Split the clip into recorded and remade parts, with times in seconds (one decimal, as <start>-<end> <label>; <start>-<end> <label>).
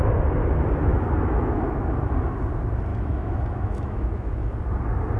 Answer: 0.0-0.9 recorded; 0.9-2.0 remade; 2.0-2.9 recorded; 2.9-4.5 remade; 4.5-5.2 recorded